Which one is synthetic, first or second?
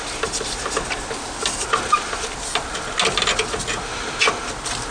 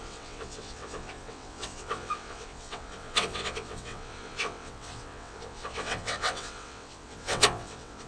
second